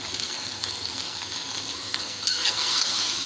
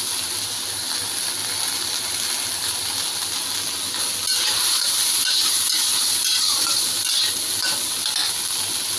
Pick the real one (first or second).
second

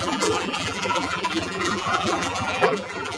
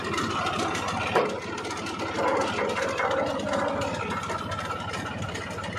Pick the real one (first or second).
second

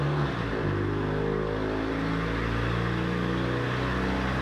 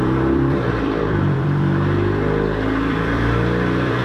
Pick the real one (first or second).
first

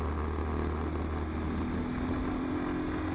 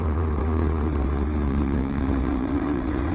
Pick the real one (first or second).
first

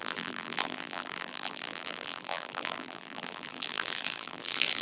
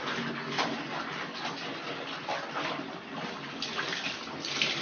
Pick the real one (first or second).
second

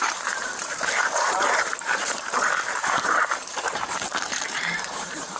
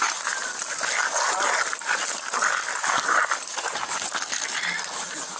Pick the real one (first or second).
second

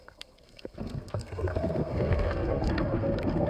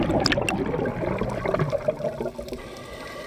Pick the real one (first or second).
second